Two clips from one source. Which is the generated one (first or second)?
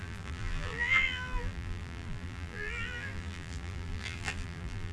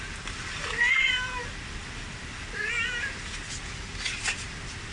first